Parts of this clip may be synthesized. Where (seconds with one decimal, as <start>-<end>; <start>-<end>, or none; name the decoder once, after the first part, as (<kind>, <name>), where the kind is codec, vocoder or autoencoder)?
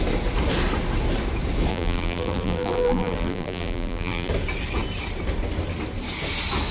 1.7-4.3 (vocoder, BigVGAN v2)